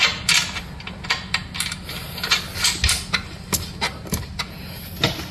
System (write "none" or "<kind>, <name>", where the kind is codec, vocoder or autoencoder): none